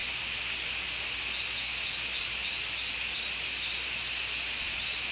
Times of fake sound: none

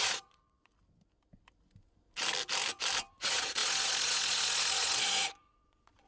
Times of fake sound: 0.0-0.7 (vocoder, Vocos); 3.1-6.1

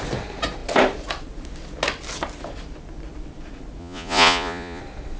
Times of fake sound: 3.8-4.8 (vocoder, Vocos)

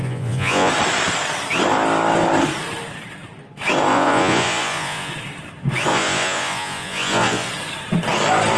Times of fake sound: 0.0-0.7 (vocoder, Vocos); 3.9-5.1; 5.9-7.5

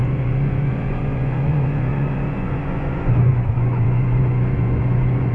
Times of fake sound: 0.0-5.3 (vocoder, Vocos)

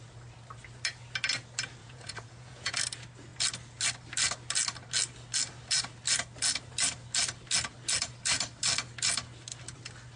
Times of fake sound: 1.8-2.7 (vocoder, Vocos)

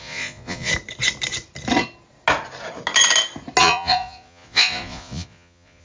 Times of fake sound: 0.0-0.7 (vocoder, Vocos); 3.6-5.8

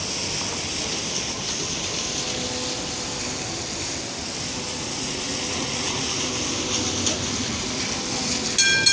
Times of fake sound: 4.7-6.3 (vocoder, Vocos)